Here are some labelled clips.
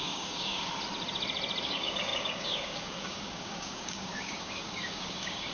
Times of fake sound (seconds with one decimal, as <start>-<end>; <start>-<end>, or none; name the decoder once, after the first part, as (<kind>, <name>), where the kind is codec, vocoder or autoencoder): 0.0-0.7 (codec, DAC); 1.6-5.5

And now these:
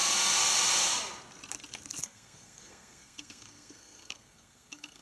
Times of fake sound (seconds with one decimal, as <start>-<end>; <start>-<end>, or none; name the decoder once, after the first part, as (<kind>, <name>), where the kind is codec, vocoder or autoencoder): 2.0-5.0 (codec, SNAC)

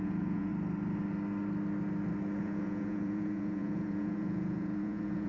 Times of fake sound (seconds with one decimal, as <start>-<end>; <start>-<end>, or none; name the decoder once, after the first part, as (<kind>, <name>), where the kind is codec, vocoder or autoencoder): 0.0-0.5 (vocoder, Vocos); 2.4-5.3

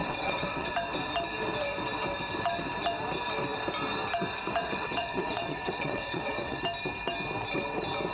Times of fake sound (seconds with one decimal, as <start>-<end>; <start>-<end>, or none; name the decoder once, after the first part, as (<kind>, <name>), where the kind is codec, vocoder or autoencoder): 0.0-0.7 (vocoder, WaveNeXt); 4.6-6.6

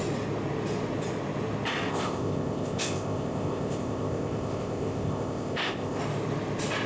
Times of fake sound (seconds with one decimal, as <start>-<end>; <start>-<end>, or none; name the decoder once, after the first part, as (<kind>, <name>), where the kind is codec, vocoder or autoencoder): 1.9-6.0 (codec, ZipCodec)